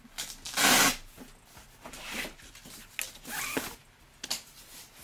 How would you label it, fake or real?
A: real